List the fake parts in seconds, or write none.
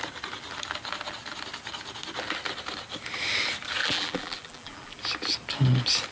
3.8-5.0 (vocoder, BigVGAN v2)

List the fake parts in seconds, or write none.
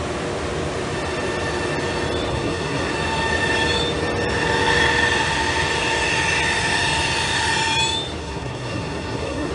2.3-2.9 (codec, SNAC); 8.2-9.5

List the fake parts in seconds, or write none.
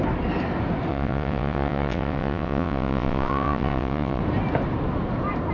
0.9-4.2 (vocoder, WaveNeXt)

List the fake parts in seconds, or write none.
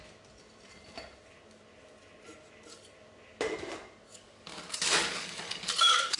4.1-6.2 (codec, DAC)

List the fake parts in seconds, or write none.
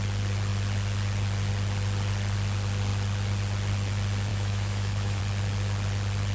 4.3-5.2 (autoencoder, DAC-VAE)